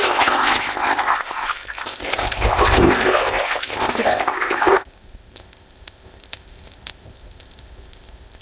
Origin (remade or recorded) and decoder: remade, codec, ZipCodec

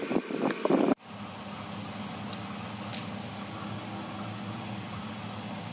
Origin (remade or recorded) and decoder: recorded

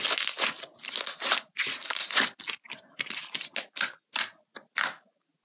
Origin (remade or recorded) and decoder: recorded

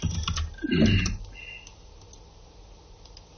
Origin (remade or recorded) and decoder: recorded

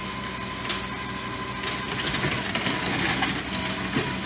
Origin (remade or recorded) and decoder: recorded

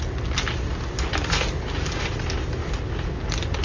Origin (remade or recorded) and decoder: recorded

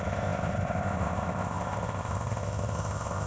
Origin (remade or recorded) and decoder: remade, codec, ZipCodec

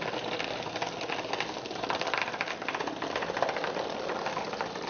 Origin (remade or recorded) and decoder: recorded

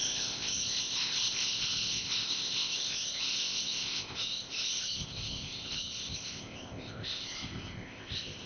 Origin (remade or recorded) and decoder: remade, codec, ZipCodec